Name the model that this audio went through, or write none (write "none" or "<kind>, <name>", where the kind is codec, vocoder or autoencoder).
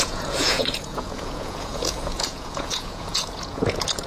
vocoder, Vocos